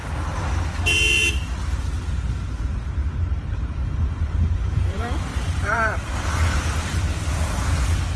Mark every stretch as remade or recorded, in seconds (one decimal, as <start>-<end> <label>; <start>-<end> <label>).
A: 0.0-3.0 recorded; 3.0-7.7 remade; 7.7-8.2 recorded

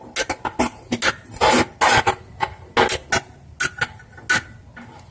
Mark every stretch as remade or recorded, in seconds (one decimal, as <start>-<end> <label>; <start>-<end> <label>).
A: 0.0-5.1 recorded